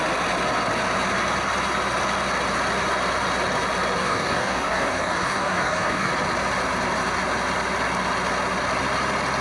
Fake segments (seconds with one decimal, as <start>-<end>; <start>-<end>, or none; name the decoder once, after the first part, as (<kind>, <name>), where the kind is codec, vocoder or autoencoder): 4.0-6.1 (codec, DAC)